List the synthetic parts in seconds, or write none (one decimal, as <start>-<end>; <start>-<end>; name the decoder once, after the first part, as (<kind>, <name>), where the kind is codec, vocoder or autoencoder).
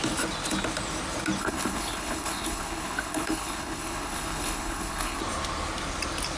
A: 1.4-5.2 (codec, HILCodec)